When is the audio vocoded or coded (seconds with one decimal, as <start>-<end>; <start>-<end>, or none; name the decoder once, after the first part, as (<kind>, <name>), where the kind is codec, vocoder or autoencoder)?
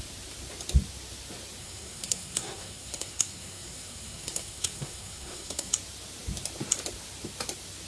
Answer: 1.6-5.7 (codec, SNAC)